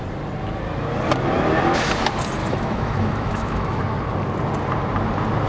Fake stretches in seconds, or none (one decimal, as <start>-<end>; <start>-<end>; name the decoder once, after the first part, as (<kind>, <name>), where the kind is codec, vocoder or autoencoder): 2.4-3.8 (autoencoder, DAC-VAE)